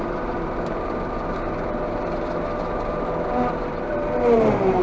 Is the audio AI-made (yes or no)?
yes